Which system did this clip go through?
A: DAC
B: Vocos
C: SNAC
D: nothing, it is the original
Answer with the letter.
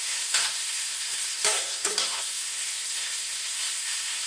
C